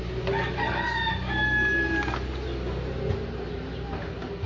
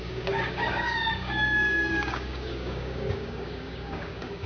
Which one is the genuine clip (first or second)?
first